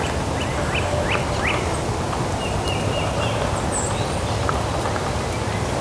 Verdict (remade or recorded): recorded